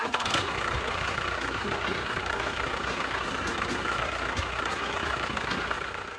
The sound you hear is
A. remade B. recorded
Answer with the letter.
A